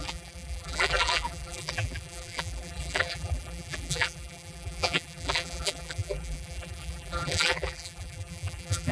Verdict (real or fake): fake